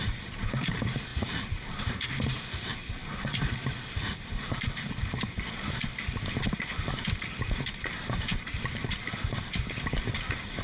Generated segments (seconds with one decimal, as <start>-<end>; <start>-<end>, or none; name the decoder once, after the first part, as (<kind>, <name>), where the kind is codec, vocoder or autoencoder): 0.0-10.6 (vocoder, BigVGAN v2)